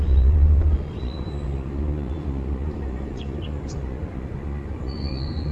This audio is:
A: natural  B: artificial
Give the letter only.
B